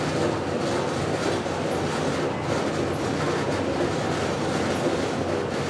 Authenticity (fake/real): real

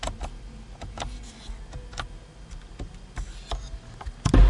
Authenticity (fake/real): real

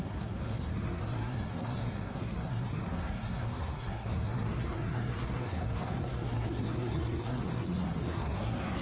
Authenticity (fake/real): fake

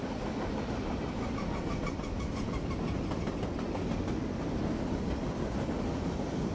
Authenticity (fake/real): real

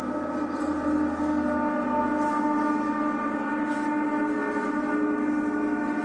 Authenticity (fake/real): real